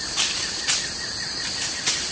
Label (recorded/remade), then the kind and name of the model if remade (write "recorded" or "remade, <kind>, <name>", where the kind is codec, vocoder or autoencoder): recorded